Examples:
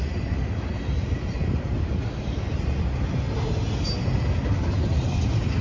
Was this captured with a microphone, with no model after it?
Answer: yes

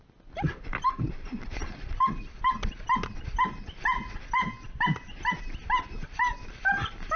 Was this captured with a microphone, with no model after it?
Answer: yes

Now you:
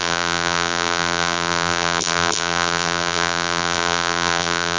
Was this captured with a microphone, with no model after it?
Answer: no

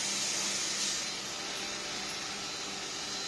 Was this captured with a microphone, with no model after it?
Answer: yes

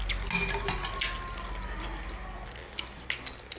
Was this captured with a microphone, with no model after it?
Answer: yes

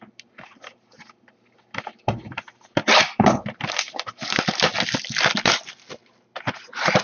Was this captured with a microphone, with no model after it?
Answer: yes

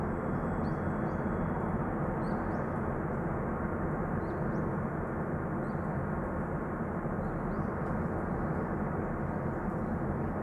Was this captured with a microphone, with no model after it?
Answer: yes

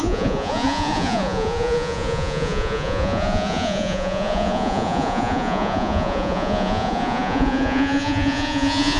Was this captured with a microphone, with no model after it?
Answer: no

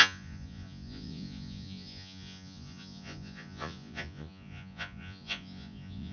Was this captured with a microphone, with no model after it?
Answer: no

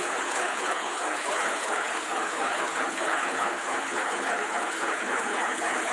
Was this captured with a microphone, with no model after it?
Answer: no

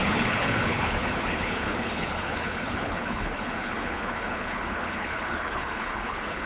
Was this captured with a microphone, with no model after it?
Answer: no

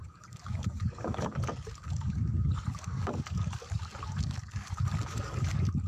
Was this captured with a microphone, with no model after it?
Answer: no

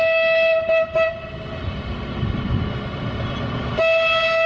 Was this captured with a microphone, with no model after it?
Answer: yes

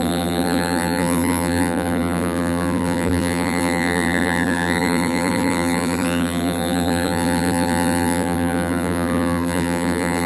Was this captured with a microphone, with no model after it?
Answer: no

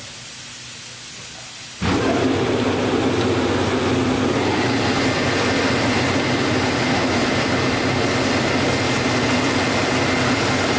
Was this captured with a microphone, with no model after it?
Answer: yes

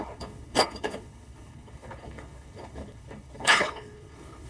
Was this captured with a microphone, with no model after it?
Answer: no